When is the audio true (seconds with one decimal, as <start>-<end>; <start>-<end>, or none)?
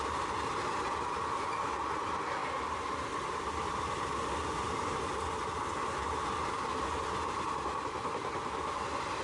0.0-9.2